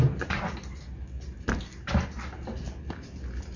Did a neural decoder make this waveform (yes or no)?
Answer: no